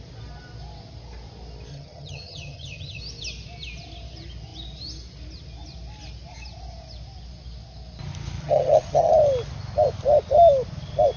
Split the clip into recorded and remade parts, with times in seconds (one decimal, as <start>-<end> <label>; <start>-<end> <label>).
0.0-1.7 recorded; 1.7-3.0 remade; 3.0-8.4 recorded; 8.4-9.1 remade; 9.1-11.2 recorded